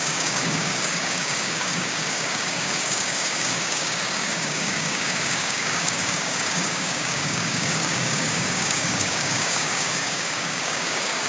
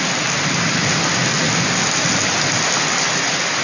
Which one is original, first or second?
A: second